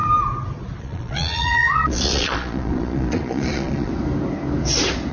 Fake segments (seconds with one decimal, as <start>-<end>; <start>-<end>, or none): 0.8-3.9